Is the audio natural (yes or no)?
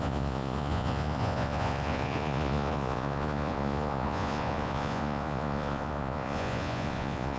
no